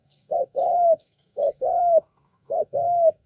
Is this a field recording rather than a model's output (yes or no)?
no